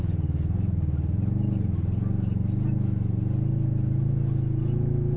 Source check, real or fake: real